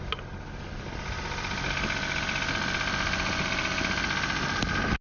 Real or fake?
real